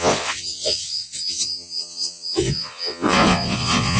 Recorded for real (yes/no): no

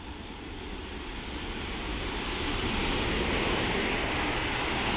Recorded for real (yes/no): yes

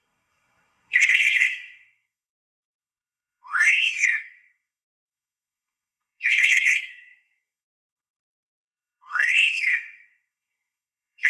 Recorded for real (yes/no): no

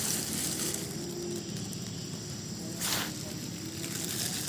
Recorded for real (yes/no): yes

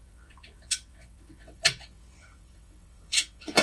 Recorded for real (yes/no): no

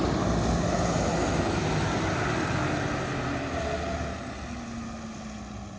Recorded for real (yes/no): yes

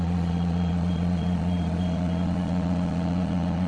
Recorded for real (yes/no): no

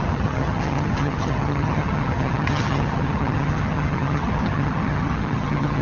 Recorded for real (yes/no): no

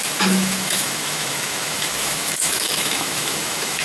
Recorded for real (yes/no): no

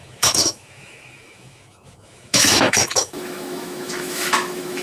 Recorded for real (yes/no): no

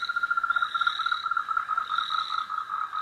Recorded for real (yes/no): yes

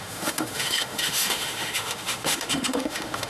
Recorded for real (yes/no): no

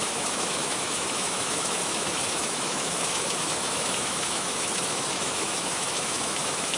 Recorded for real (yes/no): no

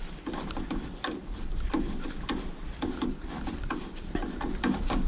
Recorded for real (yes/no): no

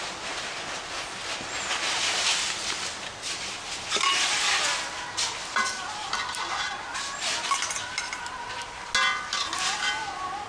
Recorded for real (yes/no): yes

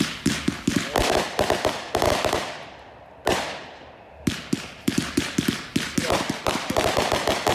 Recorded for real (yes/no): yes